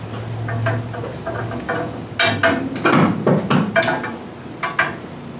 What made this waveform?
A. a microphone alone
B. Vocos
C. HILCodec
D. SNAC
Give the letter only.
A